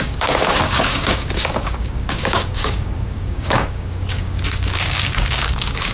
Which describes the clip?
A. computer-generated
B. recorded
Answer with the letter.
A